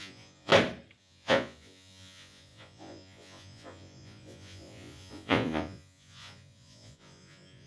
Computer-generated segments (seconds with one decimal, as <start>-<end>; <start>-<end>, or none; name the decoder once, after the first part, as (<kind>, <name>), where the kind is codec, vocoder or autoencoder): 0.0-0.5 (vocoder, Vocos); 1.0-7.7

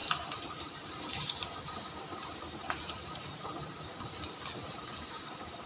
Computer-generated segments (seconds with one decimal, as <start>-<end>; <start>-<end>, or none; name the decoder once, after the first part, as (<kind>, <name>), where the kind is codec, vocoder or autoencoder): 0.0-3.4 (vocoder, BigVGAN v2); 4.6-5.3

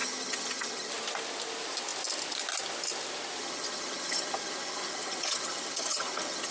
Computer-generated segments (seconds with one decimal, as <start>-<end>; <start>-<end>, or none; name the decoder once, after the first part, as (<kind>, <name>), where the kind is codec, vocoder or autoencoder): 0.0-0.9 (vocoder, HiFi-GAN); 3.4-6.5